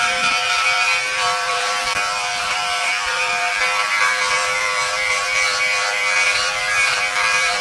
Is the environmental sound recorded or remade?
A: remade